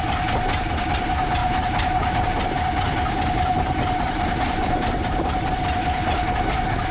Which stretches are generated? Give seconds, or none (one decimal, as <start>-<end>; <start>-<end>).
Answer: 1.4-5.5